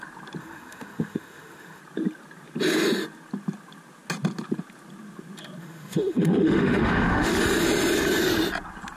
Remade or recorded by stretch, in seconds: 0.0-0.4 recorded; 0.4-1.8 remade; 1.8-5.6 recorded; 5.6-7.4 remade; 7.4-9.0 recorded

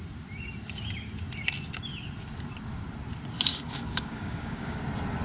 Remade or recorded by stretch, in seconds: 0.0-3.5 recorded; 3.5-4.8 remade; 4.8-5.2 recorded

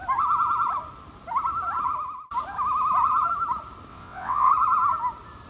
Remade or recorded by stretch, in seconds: 0.0-3.9 recorded; 3.9-4.5 remade; 4.5-5.5 recorded

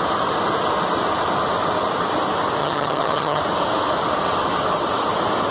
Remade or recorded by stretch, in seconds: 0.0-2.6 recorded; 2.6-3.4 remade; 3.4-5.5 recorded

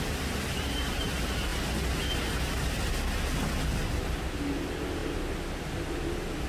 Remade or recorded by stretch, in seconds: 0.0-6.5 recorded